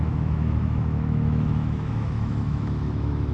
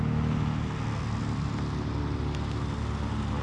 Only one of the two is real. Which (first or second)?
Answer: second